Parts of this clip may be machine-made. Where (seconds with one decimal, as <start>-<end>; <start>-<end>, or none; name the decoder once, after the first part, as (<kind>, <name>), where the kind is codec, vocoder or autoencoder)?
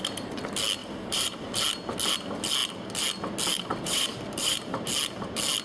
0.8-1.5 (vocoder, BigVGAN v2); 3.7-4.9